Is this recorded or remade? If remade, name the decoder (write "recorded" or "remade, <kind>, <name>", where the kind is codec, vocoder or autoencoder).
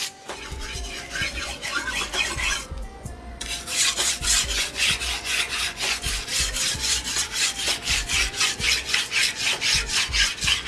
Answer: remade, vocoder, Vocos